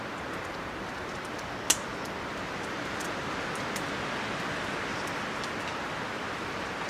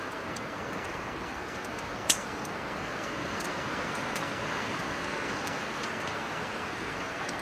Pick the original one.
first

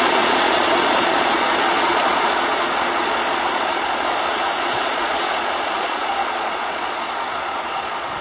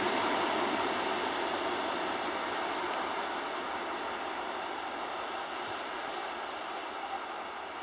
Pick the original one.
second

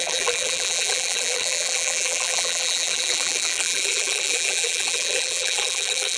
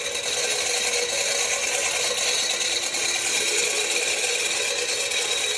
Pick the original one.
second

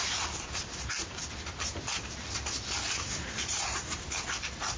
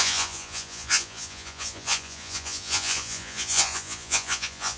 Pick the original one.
first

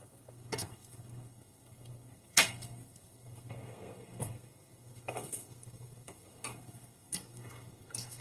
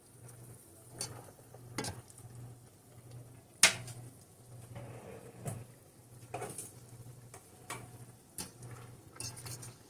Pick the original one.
second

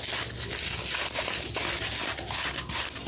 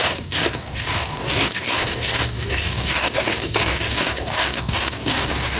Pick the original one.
first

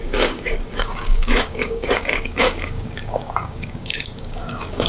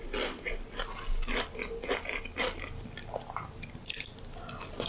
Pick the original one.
second